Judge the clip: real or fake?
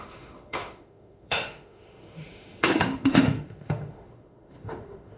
fake